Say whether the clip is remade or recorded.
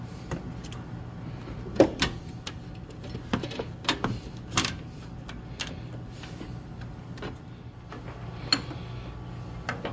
recorded